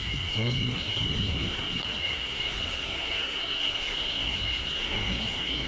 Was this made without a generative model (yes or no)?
no